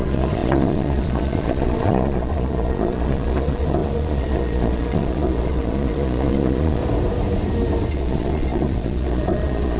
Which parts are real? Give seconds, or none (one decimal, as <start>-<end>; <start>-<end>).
6.8-7.9